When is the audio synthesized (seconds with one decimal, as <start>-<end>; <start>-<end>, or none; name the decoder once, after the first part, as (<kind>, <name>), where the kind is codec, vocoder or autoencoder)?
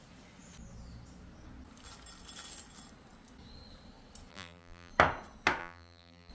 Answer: 4.3-4.9 (vocoder, BigVGAN v2); 5.6-6.3